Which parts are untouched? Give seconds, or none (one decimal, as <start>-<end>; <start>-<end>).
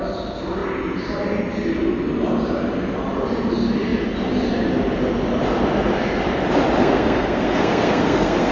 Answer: 0.0-6.8